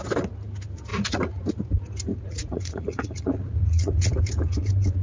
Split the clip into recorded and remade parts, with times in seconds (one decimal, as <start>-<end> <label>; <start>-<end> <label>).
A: 0.0-0.9 recorded; 0.9-1.5 remade; 1.5-2.1 recorded; 2.1-4.2 remade; 4.2-5.0 recorded